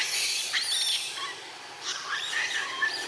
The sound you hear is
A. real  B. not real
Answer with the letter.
A